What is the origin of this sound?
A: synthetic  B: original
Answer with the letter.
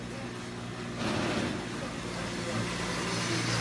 B